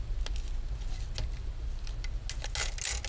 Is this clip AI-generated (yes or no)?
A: no